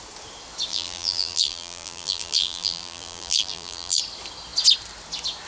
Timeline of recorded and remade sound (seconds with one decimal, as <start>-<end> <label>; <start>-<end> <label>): 0.0-0.7 recorded; 0.7-4.0 remade; 4.0-5.5 recorded